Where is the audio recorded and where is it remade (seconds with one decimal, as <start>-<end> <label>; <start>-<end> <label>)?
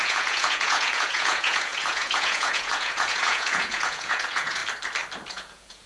0.0-4.6 remade; 4.6-5.3 recorded; 5.3-5.9 remade